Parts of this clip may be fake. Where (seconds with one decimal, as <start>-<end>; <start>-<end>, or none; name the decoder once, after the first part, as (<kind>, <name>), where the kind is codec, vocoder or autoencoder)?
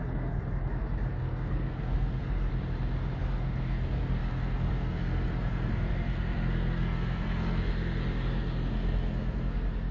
0.0-2.5 (codec, SNAC); 3.2-9.9